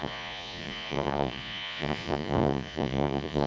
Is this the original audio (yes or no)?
no